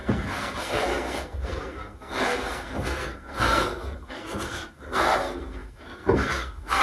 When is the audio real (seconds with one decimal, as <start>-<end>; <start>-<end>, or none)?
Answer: none